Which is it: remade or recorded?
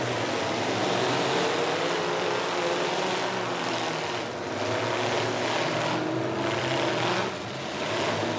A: recorded